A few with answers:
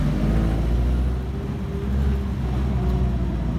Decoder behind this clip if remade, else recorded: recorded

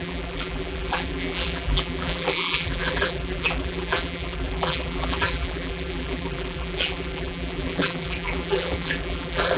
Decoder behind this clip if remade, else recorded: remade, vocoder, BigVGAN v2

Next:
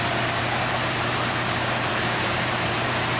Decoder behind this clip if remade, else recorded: remade, vocoder, BigVGAN v2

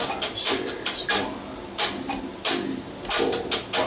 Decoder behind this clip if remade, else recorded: recorded